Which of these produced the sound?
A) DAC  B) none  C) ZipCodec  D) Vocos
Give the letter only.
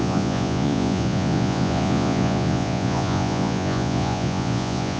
D